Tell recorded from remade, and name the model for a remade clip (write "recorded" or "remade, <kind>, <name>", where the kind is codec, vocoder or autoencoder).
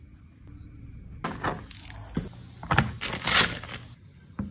recorded